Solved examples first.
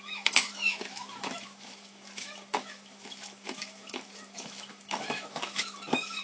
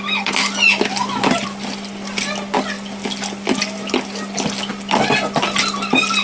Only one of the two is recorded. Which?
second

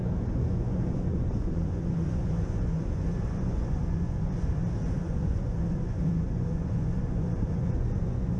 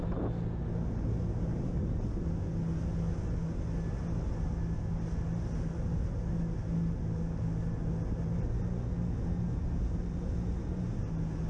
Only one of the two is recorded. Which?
second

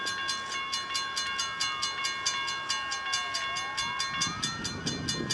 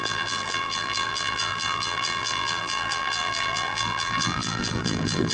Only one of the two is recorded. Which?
first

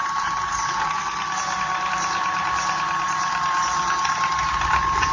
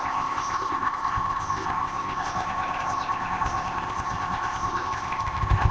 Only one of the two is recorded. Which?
first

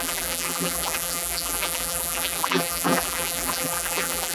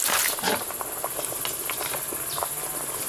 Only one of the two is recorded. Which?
second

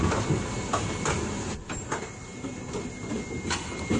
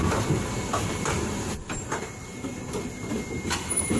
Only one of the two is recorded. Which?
first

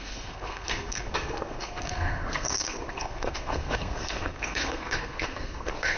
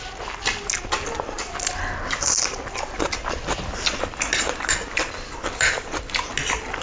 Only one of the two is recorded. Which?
second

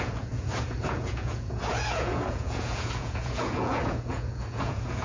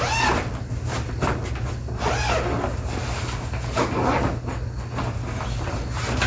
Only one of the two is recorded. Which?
second